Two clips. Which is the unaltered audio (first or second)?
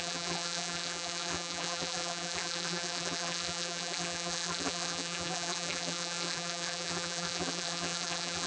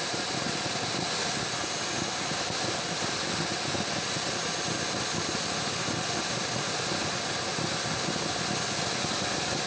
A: second